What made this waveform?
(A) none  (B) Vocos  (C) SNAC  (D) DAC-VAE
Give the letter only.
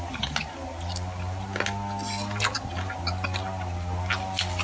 A